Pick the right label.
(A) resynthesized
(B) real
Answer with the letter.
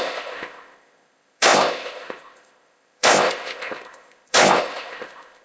A